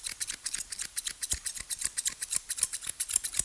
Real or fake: real